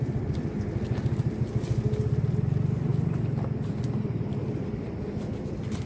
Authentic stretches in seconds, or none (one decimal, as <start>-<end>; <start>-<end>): 0.0-5.9